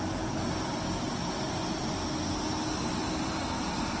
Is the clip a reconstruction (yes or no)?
no